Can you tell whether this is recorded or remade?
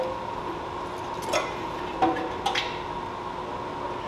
recorded